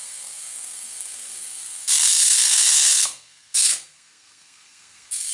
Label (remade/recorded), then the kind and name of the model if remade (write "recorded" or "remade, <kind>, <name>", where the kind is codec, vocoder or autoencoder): remade, codec, SNAC